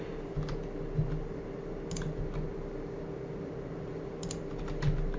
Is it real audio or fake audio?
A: real